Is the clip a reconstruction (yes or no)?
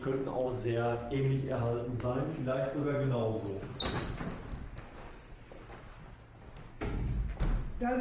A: no